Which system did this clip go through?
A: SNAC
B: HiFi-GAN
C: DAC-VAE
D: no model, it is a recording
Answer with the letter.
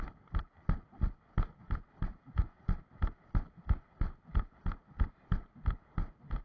D